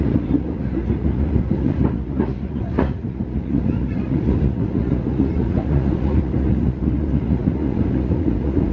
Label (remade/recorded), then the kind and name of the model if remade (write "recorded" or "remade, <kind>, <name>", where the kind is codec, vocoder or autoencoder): remade, vocoder, Vocos